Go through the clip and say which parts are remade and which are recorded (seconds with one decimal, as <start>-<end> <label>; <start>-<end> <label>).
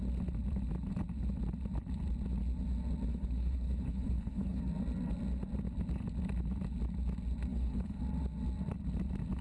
0.0-3.1 recorded; 3.1-4.6 remade; 4.6-7.5 recorded; 7.5-8.0 remade; 8.0-9.4 recorded